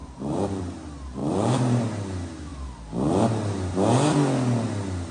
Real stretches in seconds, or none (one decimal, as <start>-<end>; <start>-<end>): 0.6-1.2; 1.8-5.1